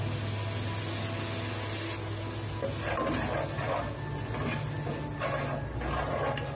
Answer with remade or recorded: recorded